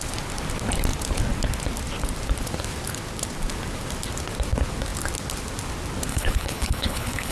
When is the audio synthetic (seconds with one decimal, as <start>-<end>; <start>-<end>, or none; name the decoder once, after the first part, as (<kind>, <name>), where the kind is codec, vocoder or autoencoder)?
6.1-7.3 (codec, HILCodec)